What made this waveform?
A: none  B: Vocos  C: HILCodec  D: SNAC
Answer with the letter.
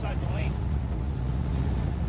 B